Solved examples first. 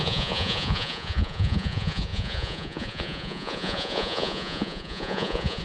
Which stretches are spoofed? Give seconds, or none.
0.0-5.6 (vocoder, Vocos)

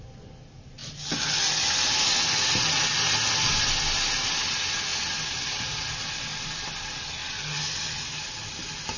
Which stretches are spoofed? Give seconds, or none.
none

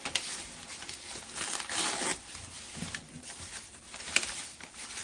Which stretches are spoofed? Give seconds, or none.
2.1-3.8 (vocoder, BigVGAN v2)

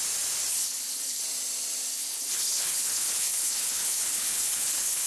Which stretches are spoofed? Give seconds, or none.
0.5-1.2 (codec, HILCodec); 1.9-5.1

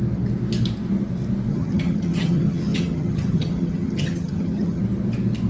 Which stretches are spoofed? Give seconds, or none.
1.5-4.8 (vocoder, HiFi-GAN)

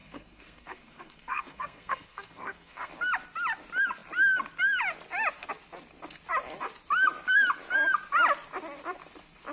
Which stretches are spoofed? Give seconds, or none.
0.0-2.9 (codec, SNAC)

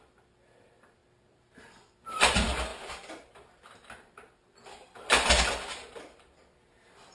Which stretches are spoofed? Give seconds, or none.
none